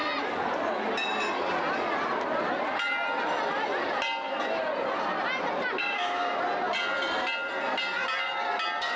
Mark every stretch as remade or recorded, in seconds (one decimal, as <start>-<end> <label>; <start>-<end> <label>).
0.0-5.8 recorded; 5.8-6.4 remade; 6.4-9.0 recorded